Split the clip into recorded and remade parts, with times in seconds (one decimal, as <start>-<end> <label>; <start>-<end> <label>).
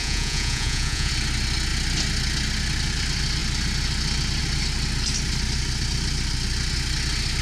0.0-1.1 remade; 1.1-7.4 recorded